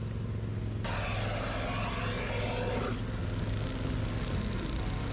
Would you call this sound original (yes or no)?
yes